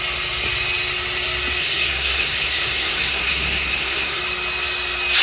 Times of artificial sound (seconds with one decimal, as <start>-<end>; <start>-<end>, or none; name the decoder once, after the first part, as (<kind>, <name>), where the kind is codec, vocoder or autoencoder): 1.6-4.2 (codec, SNAC)